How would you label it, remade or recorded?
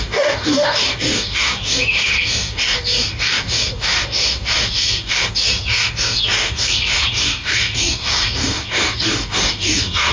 remade